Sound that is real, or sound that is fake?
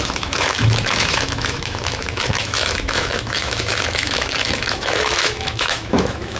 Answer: fake